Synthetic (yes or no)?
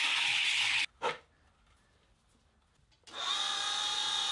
no